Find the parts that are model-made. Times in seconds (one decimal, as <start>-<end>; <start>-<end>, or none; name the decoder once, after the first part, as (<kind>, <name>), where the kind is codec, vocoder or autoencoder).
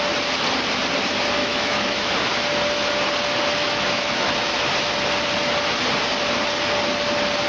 1.4-2.1 (autoencoder, DAC-VAE); 3.6-4.5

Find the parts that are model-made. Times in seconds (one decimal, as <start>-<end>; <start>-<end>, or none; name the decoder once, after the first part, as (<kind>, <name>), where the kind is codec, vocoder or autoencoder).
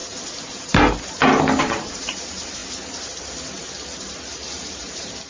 1.6-2.6 (vocoder, BigVGAN v2); 4.7-5.3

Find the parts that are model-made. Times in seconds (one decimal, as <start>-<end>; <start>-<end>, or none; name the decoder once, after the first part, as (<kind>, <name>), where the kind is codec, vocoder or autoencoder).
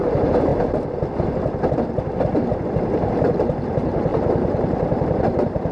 0.0-0.5 (vocoder, BigVGAN v2); 2.7-5.7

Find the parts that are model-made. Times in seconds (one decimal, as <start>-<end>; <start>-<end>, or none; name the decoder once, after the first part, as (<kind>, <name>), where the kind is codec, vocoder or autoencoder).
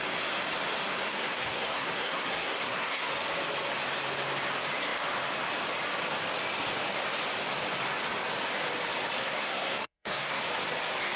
1.1-3.1 (codec, SNAC); 9.2-10.4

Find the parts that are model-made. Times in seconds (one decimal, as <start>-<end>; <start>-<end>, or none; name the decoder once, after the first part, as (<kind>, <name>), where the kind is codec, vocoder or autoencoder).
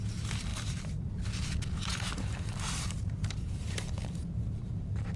0.5-1.1 (vocoder, BigVGAN v2); 1.9-5.2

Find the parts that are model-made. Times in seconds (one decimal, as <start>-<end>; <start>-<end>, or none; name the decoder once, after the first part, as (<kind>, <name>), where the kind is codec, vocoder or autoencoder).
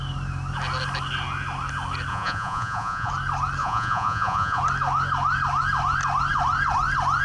2.1-3.1 (vocoder, Vocos); 3.6-4.6